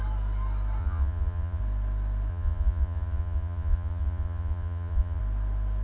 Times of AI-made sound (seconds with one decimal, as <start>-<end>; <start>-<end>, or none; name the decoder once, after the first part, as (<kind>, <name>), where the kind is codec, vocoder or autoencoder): 0.8-1.6 (vocoder, Vocos); 2.3-5.2